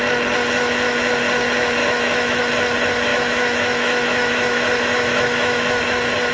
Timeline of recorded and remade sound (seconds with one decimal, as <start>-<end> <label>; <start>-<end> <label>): 0.0-1.8 recorded; 1.8-2.4 remade; 2.4-3.1 recorded; 3.1-5.8 remade; 5.8-6.3 recorded